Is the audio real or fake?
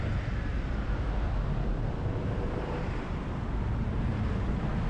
fake